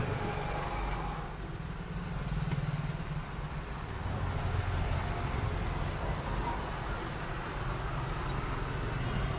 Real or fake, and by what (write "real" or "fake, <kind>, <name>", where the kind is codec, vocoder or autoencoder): real